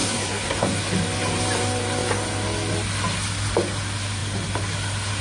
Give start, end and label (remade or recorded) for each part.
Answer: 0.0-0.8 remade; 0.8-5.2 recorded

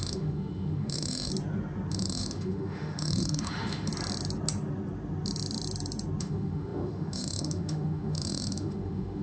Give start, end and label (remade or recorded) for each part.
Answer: 0.0-1.3 remade; 1.3-1.9 recorded; 1.9-3.9 remade; 3.9-6.2 recorded; 6.2-9.2 remade